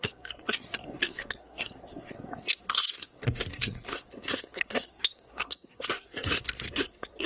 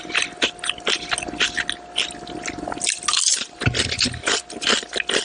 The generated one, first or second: first